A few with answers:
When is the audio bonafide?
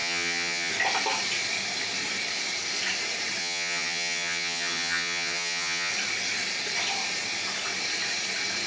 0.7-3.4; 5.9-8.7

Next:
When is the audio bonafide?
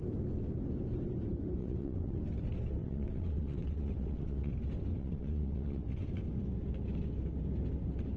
0.0-1.6; 2.2-2.8; 4.5-4.9; 6.1-8.2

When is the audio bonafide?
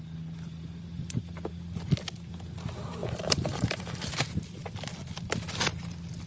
0.0-0.9; 1.5-3.0; 4.1-6.3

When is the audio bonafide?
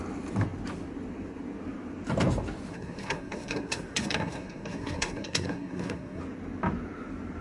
0.0-2.7; 6.2-7.4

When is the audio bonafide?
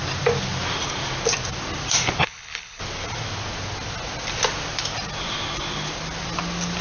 0.0-2.2; 2.8-6.8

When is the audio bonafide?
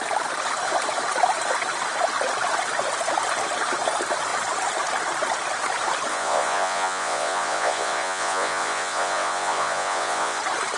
0.0-6.1; 10.4-10.8